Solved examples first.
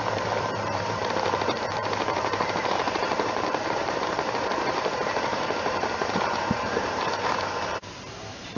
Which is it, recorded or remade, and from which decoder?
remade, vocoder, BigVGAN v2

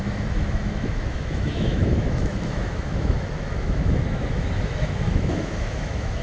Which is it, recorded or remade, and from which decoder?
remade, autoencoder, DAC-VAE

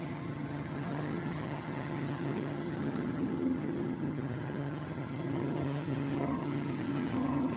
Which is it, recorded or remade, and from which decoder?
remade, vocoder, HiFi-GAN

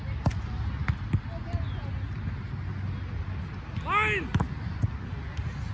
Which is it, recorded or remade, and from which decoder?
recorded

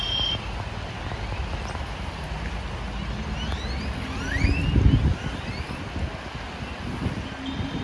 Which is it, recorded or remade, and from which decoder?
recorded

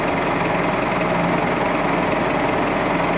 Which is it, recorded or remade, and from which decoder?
recorded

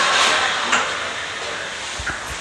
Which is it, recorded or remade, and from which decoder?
recorded